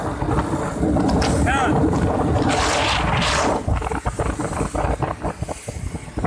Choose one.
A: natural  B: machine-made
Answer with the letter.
A